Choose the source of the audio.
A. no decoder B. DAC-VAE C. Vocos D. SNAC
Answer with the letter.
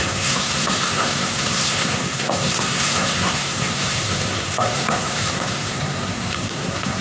D